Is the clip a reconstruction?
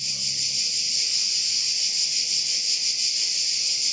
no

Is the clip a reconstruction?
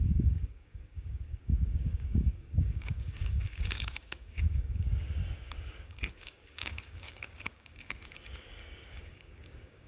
yes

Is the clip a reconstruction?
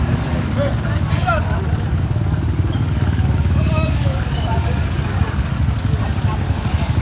yes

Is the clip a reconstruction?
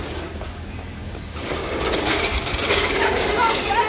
yes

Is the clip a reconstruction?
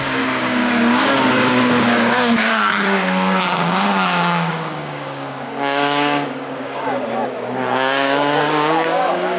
yes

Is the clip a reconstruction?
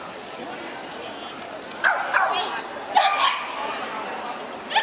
no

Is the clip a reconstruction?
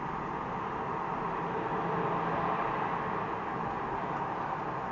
no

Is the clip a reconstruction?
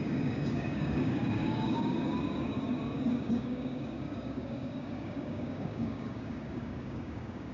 yes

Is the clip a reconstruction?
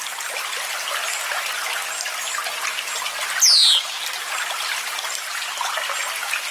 no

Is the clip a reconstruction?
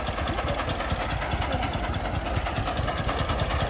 no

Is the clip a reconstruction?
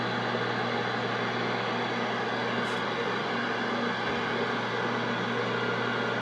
no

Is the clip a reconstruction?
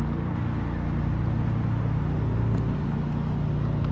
no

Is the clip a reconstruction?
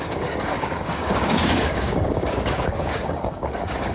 yes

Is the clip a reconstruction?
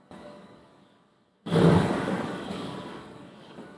yes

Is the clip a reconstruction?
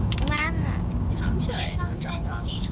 yes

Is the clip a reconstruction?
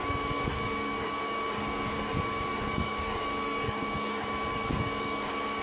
yes